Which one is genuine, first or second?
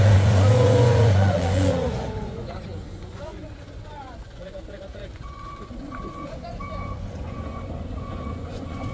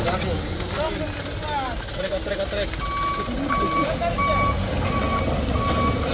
second